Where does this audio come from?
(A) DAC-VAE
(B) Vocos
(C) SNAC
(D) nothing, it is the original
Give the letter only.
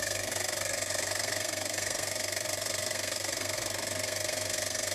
C